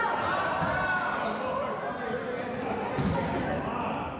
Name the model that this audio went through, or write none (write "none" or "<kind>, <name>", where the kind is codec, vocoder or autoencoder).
none